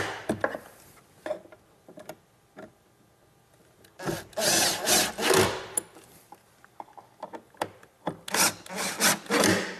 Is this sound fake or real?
real